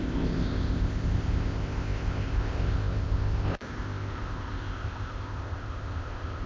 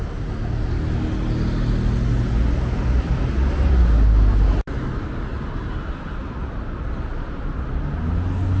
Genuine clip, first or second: second